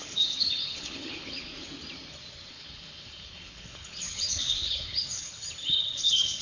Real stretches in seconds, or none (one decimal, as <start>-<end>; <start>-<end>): 1.5-2.5